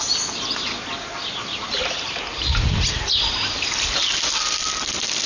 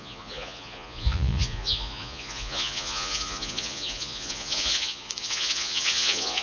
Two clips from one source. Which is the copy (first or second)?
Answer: second